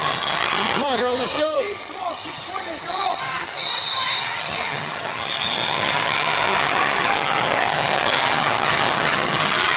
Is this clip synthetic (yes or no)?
yes